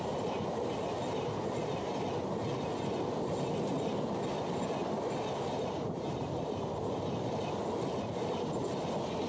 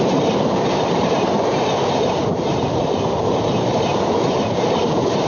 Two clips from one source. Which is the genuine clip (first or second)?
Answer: first